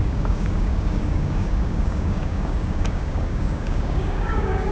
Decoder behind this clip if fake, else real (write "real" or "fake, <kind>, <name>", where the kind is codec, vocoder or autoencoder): fake, codec, DAC